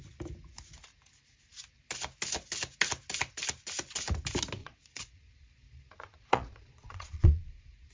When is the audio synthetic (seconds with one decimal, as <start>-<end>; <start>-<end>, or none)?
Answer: 4.6-7.9